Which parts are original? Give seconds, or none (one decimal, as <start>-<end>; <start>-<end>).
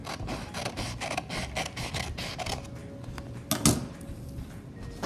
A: 0.0-5.1